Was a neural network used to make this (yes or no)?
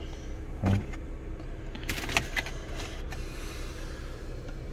no